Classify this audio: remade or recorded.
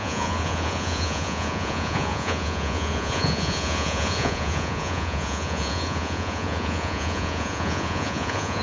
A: remade